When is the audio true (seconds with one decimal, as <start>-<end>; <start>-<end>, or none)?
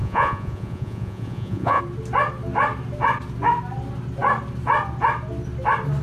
1.8-6.0